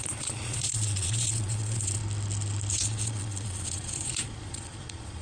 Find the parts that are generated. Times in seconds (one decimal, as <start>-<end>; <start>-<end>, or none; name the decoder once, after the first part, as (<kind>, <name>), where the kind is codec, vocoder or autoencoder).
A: 0.0-2.0 (vocoder, Vocos); 2.7-5.2